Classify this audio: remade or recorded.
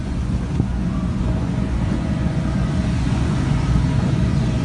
remade